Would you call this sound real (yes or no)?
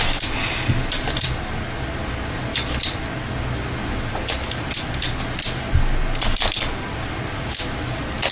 yes